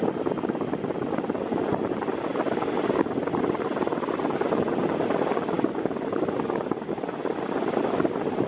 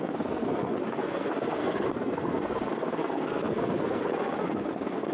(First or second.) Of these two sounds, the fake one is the second